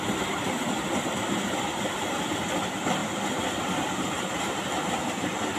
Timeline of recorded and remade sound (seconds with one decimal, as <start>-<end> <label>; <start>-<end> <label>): 0.0-5.6 recorded